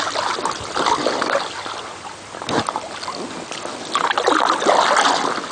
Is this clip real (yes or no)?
yes